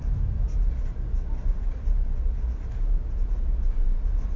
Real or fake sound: real